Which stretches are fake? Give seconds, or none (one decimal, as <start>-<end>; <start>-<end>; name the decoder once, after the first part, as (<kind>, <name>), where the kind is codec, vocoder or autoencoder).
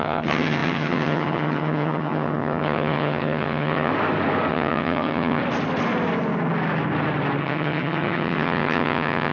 0.0-3.9 (vocoder, HiFi-GAN); 4.5-5.4; 7.4-9.3